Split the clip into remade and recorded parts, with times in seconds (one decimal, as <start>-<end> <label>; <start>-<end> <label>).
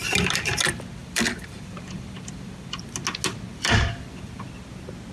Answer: 0.0-1.0 recorded; 1.0-2.8 remade; 2.8-3.5 recorded; 3.5-4.3 remade; 4.3-5.1 recorded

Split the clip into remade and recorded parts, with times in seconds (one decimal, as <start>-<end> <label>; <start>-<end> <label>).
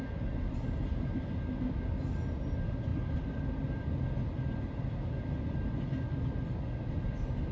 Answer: 0.0-2.9 recorded; 2.9-4.0 remade; 4.0-7.5 recorded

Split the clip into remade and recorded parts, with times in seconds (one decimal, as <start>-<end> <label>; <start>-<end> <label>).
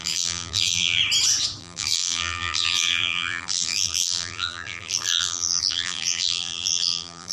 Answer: 0.0-1.0 remade; 1.0-1.6 recorded; 1.6-7.3 remade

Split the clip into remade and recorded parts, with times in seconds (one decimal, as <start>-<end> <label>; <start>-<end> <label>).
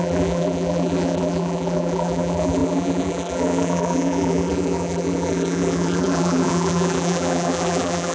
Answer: 0.0-8.1 remade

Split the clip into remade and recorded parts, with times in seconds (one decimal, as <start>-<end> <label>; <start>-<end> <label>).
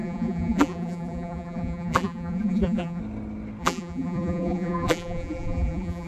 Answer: 0.0-3.0 remade; 3.0-3.6 recorded; 3.6-6.1 remade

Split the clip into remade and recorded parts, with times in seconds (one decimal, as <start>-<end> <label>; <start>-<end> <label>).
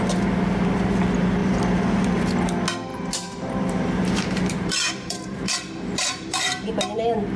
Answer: 0.0-1.4 recorded; 1.4-2.2 remade; 2.2-2.9 recorded; 2.9-6.7 remade; 6.7-7.4 recorded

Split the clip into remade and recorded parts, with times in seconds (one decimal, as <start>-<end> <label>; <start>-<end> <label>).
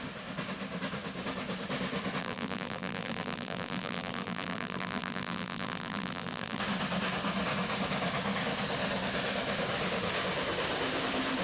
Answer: 0.0-2.2 recorded; 2.2-6.6 remade; 6.6-11.4 recorded